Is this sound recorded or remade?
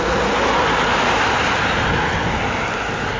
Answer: recorded